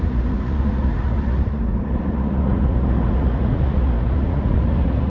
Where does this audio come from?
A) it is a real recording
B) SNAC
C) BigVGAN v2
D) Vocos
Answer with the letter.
D